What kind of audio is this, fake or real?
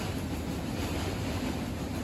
real